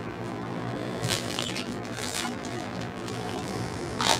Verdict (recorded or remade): remade